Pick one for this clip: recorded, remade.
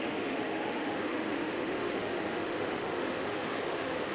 remade